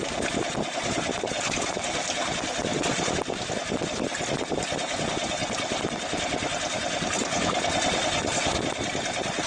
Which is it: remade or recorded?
recorded